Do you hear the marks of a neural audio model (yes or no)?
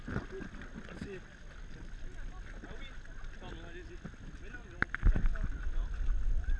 no